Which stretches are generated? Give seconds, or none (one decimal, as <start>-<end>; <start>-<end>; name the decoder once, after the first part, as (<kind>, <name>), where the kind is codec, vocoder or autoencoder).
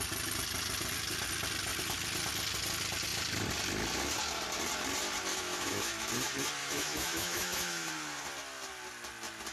5.3-6.1 (autoencoder, DAC-VAE); 6.6-7.9